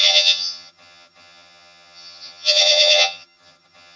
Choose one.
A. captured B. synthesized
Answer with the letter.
B